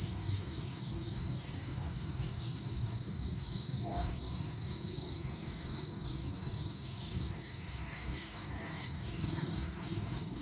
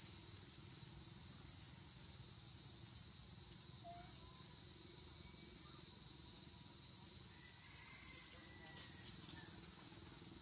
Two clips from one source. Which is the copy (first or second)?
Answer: first